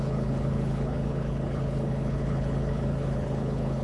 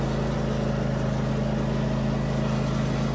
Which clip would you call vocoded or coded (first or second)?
first